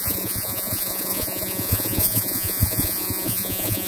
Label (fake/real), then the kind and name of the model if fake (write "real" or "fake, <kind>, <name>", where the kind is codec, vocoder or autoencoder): fake, vocoder, Vocos